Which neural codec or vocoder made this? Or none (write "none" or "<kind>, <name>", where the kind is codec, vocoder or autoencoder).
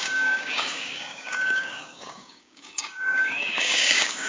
codec, DAC